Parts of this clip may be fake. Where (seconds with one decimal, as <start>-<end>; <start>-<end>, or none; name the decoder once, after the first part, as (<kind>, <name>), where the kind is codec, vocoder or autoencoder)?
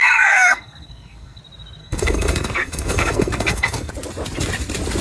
0.0-1.4 (codec, SNAC); 1.8-3.9